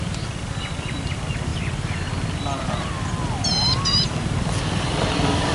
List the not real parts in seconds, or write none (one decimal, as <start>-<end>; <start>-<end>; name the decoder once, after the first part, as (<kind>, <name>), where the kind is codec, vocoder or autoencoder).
none